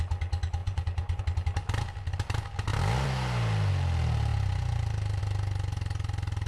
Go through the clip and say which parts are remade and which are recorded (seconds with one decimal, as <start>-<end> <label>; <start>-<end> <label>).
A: 0.0-0.6 recorded; 0.6-1.2 remade; 1.2-6.5 recorded